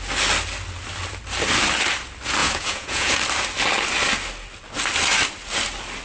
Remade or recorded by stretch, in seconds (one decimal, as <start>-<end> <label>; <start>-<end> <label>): 0.0-2.4 recorded; 2.4-3.2 remade; 3.2-6.0 recorded